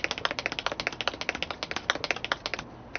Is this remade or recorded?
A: recorded